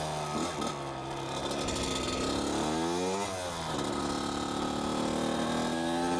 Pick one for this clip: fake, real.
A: real